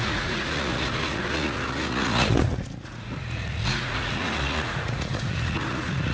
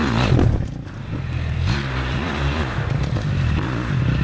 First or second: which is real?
second